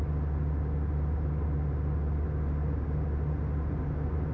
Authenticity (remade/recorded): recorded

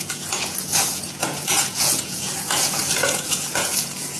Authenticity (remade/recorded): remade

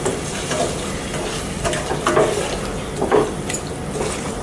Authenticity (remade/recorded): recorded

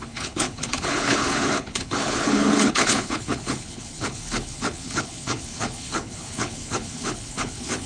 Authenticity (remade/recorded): remade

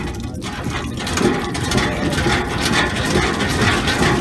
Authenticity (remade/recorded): recorded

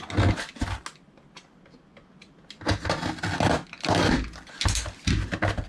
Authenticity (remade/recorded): recorded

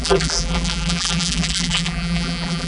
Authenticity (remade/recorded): remade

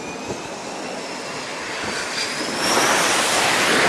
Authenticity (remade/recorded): recorded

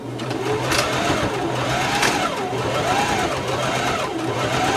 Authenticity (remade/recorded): recorded